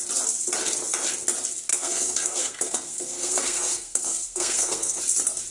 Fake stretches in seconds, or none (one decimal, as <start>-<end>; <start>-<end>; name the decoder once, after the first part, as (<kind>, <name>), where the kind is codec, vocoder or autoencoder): 1.7-5.0 (codec, SNAC)